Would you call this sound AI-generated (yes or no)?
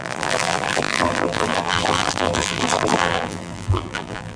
yes